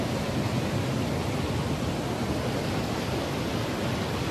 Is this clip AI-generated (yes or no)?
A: no